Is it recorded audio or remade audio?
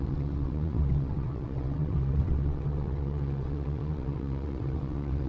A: remade